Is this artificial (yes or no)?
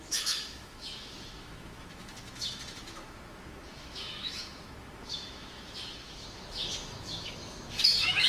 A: yes